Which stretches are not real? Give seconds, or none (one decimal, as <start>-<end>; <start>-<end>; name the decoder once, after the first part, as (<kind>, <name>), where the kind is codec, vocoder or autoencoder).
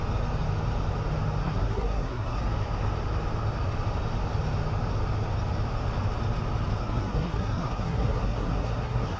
1.4-2.4 (codec, SNAC); 6.8-9.2